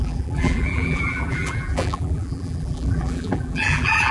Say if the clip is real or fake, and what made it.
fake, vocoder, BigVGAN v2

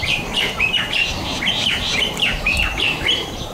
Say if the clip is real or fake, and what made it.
fake, vocoder, BigVGAN v2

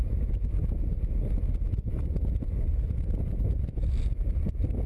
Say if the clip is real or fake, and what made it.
fake, vocoder, BigVGAN v2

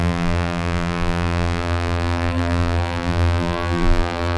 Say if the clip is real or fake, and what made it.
fake, vocoder, BigVGAN v2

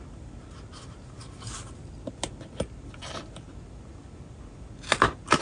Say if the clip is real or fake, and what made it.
real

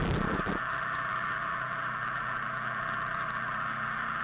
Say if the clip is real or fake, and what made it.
fake, vocoder, BigVGAN v2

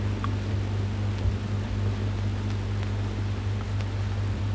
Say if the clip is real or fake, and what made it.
real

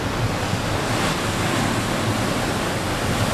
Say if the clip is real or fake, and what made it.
real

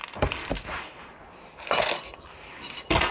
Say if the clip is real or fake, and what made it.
fake, vocoder, BigVGAN v2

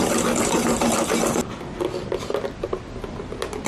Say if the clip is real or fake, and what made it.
real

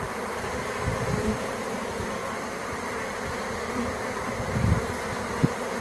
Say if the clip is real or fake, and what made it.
fake, vocoder, BigVGAN v2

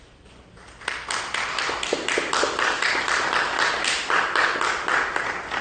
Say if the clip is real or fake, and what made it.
fake, vocoder, BigVGAN v2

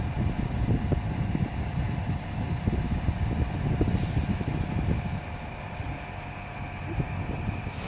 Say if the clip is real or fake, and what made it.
real